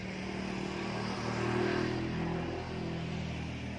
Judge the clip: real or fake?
real